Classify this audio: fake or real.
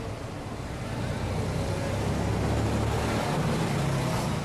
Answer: real